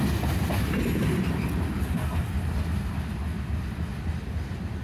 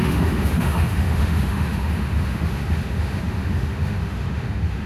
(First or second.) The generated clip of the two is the second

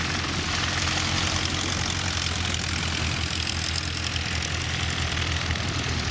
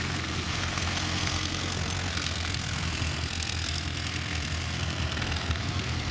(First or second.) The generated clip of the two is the second